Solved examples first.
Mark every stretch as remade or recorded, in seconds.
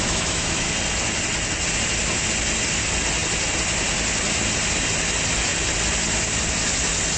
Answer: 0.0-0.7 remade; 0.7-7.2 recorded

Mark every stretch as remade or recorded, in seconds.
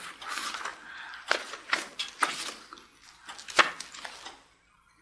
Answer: 0.0-5.0 recorded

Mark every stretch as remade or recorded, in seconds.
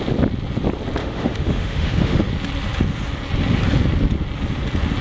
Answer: 0.0-1.0 recorded; 1.0-2.3 remade; 2.3-5.0 recorded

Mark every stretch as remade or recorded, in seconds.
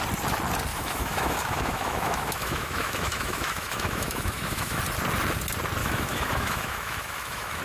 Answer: 0.0-0.7 recorded; 0.7-4.8 remade; 4.8-5.8 recorded; 5.8-7.6 remade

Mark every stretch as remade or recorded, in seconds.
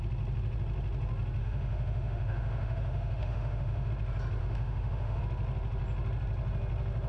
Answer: 0.0-1.4 recorded; 1.4-3.9 remade; 3.9-4.4 recorded; 4.4-5.2 remade; 5.2-7.1 recorded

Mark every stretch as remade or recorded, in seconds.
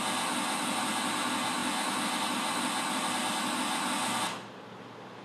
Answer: 0.0-5.2 recorded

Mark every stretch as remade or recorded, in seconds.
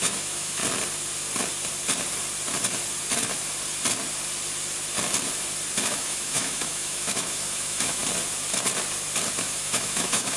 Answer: 0.0-0.6 remade; 0.6-5.8 recorded; 5.8-8.0 remade; 8.0-9.4 recorded; 9.4-10.4 remade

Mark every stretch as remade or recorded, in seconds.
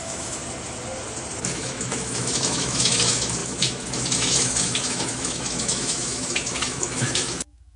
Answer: 0.0-0.4 remade; 0.4-1.4 recorded; 1.4-7.8 remade